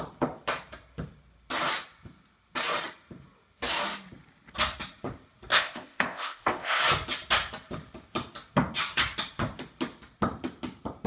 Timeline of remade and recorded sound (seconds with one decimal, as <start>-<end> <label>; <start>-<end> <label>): 0.0-5.5 recorded; 5.5-6.8 remade; 6.8-11.1 recorded